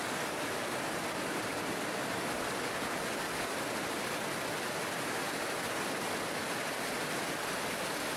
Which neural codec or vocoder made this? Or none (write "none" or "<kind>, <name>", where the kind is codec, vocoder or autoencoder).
none